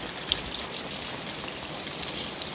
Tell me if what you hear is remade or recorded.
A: recorded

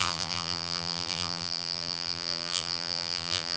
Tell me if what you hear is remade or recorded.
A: remade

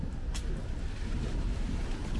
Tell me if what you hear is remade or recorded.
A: recorded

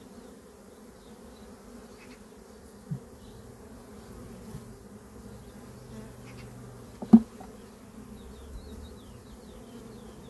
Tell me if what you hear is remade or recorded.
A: recorded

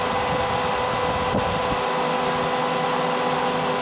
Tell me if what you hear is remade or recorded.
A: recorded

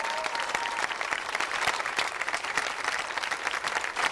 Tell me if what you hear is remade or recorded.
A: remade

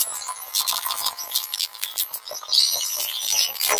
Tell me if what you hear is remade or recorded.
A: remade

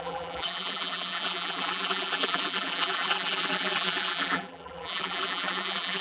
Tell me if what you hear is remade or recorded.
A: remade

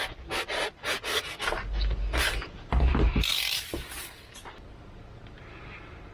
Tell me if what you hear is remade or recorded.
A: recorded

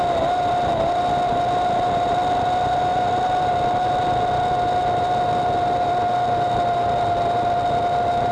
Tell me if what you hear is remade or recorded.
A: recorded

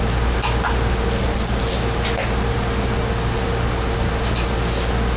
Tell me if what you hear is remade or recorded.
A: recorded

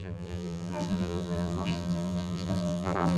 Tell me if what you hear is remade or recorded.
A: remade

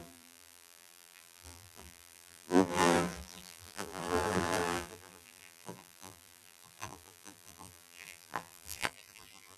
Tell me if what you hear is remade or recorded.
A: remade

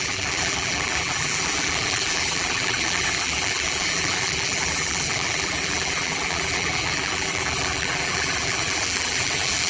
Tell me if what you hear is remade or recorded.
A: remade